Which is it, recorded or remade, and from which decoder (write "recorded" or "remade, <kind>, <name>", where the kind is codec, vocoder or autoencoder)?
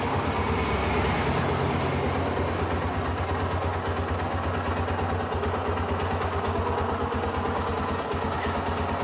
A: recorded